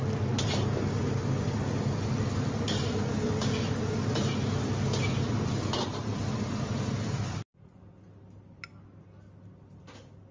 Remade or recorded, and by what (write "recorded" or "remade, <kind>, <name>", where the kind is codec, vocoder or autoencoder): recorded